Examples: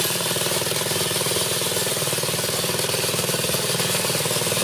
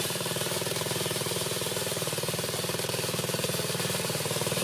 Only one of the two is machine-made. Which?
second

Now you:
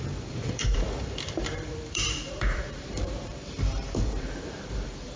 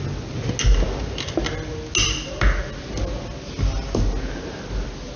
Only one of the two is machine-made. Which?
first